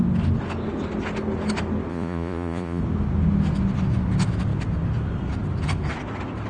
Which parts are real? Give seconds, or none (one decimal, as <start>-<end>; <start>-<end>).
0.0-1.9; 2.8-6.5